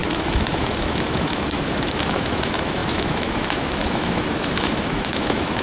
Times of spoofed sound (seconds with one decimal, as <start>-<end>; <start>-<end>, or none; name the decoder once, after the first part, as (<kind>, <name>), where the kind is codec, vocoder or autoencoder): 0.0-5.6 (autoencoder, DAC-VAE)